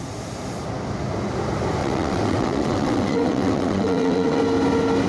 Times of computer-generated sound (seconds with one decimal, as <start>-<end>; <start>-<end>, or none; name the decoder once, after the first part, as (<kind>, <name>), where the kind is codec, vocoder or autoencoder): 1.8-4.4 (vocoder, WaveNeXt)